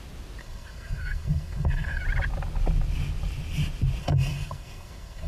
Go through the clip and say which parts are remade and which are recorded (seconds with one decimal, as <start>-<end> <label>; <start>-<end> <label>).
0.0-0.4 recorded; 0.4-2.0 remade; 2.0-4.0 recorded; 4.0-5.3 remade